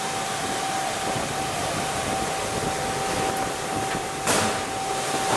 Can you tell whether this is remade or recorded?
recorded